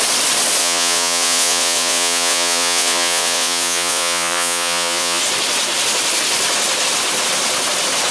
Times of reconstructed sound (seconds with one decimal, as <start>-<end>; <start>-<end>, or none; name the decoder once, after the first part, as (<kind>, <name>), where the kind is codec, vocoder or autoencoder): 0.6-5.2 (vocoder, Vocos)